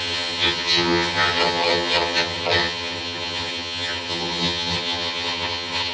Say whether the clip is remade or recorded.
remade